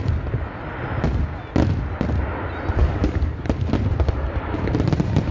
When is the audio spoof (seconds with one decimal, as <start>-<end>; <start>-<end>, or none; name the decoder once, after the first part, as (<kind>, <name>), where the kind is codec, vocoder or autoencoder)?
2.8-3.4 (codec, DAC)